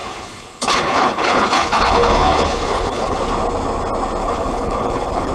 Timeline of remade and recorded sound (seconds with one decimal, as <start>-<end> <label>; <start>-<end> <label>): 0.0-3.2 remade; 3.2-4.2 recorded; 4.2-5.3 remade

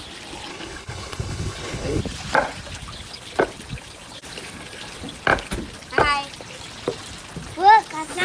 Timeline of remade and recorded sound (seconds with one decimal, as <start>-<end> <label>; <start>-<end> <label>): 0.0-0.5 recorded; 0.5-2.0 remade; 2.0-8.2 recorded

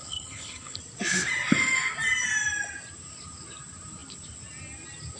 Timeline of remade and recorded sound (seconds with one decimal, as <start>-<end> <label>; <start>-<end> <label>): 0.0-0.8 remade; 0.8-5.2 recorded

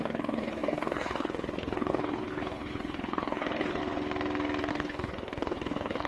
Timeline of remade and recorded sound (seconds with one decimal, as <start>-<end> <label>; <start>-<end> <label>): 0.0-3.8 remade; 3.8-4.7 recorded; 4.7-6.1 remade